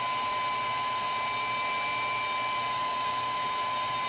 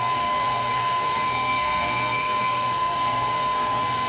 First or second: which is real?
first